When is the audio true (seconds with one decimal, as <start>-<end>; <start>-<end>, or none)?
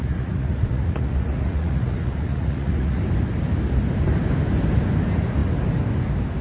3.0-6.4